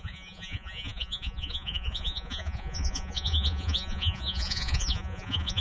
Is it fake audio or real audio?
fake